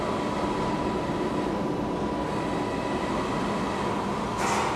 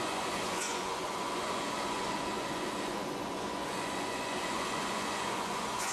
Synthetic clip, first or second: second